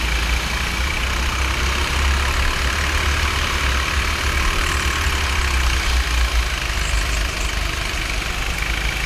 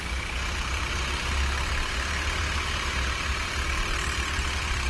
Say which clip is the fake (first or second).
second